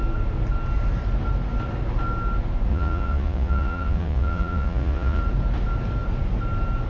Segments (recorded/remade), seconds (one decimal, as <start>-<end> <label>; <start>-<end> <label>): 0.0-2.7 recorded; 2.7-5.2 remade; 5.2-6.9 recorded